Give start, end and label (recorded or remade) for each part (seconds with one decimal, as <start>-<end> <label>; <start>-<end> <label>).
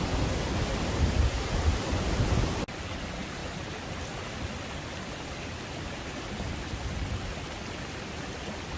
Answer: 0.0-8.8 recorded